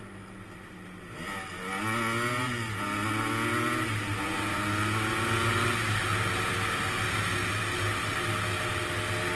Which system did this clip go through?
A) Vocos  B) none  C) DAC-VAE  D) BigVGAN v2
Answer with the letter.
B